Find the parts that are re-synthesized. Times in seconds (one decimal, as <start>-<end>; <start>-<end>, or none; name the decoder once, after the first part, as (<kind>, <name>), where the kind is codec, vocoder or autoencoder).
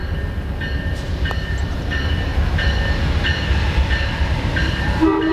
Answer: 0.8-2.3 (vocoder, BigVGAN v2); 4.6-5.3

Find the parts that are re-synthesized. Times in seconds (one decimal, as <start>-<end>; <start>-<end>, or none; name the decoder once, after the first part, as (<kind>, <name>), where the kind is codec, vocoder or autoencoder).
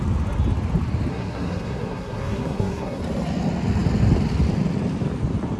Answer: 1.1-3.0 (codec, SNAC)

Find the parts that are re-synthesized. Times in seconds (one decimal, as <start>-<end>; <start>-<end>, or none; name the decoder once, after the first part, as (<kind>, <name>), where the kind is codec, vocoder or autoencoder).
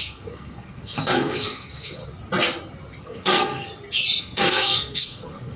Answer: 0.0-2.0 (codec, SNAC); 3.0-3.7; 4.2-5.6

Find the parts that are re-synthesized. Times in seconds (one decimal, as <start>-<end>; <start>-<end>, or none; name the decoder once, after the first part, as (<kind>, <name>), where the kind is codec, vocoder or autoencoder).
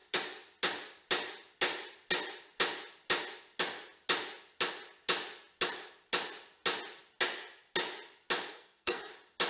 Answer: 8.5-9.1 (codec, SNAC)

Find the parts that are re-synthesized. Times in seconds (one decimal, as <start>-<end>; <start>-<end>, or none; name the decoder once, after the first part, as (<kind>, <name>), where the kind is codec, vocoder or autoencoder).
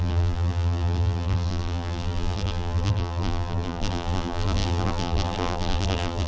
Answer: 0.0-6.3 (vocoder, BigVGAN v2)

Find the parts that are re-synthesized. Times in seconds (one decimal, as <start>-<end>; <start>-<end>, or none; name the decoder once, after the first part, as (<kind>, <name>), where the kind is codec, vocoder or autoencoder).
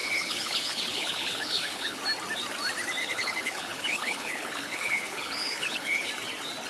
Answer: 0.0-2.0 (codec, HILCodec); 3.0-6.1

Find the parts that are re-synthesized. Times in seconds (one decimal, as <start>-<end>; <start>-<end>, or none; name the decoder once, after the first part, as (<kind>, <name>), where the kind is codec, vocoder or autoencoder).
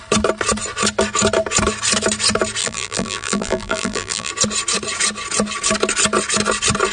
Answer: 2.6-4.3 (vocoder, BigVGAN v2)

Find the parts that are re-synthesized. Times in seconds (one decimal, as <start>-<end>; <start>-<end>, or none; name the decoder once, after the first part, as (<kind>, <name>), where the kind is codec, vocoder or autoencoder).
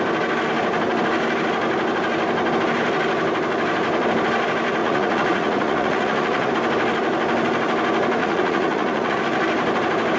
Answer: 4.8-6.5 (vocoder, Vocos); 8.2-9.2